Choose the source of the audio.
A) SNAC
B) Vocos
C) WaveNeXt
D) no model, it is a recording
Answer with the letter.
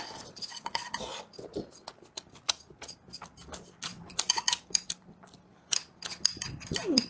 D